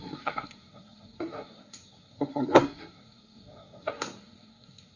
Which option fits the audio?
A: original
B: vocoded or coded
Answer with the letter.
B